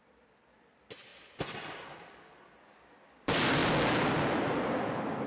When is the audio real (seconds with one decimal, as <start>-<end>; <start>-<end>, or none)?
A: 3.6-4.1

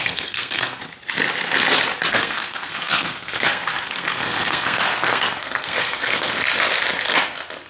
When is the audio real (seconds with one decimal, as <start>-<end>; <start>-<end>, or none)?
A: 0.8-2.1; 6.4-7.7

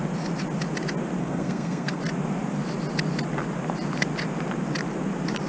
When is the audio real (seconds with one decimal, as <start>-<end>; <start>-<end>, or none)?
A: 0.0-1.2; 2.0-5.5

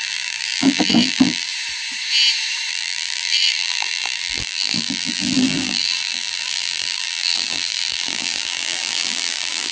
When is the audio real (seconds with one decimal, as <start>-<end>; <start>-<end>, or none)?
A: 1.5-2.7

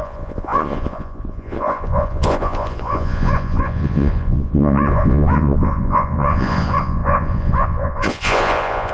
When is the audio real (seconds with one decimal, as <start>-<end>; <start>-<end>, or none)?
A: none

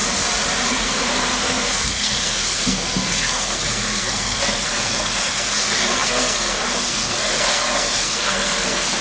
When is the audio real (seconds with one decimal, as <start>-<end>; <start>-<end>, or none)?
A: 0.0-0.8